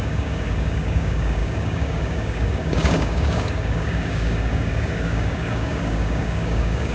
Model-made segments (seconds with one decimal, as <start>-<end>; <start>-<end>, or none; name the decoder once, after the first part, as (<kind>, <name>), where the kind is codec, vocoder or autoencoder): 0.0-6.9 (codec, DAC)